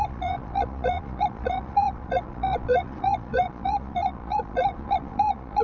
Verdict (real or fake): fake